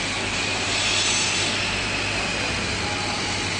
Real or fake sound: real